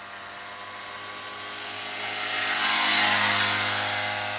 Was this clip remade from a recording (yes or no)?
no